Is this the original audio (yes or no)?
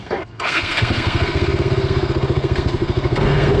no